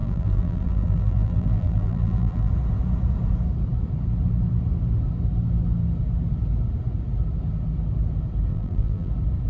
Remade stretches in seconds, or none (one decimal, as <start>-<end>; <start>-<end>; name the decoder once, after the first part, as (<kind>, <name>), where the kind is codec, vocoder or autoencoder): 0.0-2.5 (vocoder, BigVGAN v2); 8.5-9.1